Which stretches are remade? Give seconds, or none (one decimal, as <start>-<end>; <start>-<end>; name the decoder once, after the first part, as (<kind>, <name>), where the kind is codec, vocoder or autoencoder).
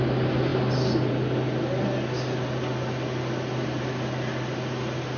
none